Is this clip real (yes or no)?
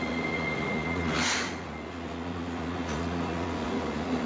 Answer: no